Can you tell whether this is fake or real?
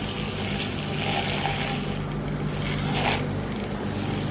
real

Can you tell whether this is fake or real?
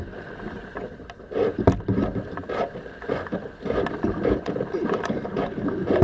real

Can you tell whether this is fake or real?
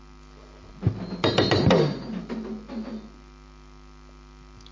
real